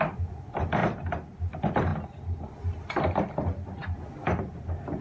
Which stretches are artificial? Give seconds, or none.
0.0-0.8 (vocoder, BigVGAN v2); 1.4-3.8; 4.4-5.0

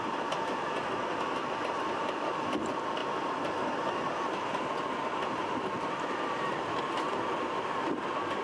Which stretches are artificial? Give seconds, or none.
0.0-8.4 (vocoder, BigVGAN v2)

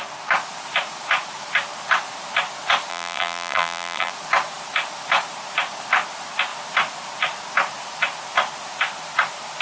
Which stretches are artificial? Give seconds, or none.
2.9-4.1 (vocoder, BigVGAN v2)

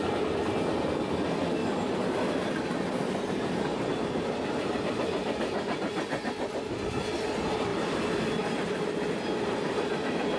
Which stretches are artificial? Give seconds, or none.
none

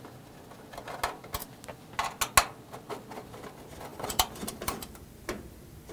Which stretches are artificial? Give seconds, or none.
3.9-5.0 (vocoder, BigVGAN v2)